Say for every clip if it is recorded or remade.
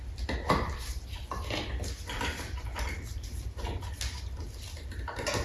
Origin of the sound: recorded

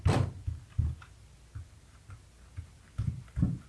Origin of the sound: recorded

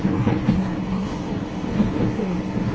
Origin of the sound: remade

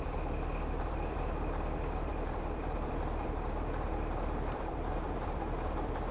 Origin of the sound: remade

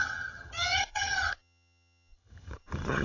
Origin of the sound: remade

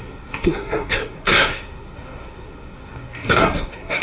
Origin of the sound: remade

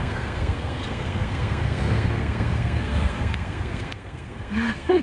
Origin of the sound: remade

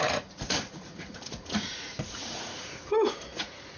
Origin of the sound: remade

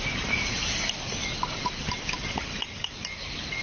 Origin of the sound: recorded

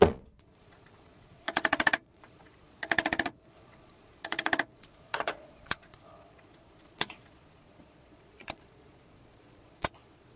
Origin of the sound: remade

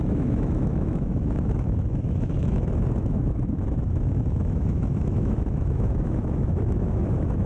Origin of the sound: remade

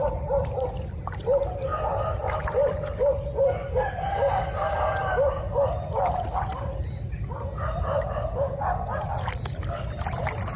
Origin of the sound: recorded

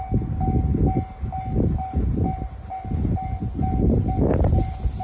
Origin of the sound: recorded